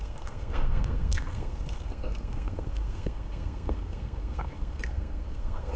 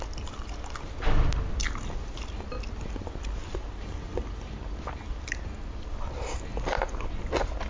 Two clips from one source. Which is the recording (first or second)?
second